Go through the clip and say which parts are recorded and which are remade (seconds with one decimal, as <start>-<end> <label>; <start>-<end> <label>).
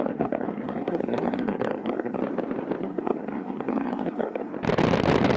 0.0-2.2 remade; 2.2-2.8 recorded; 2.8-4.5 remade; 4.5-5.4 recorded